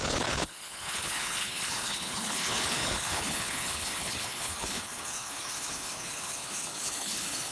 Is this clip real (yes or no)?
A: no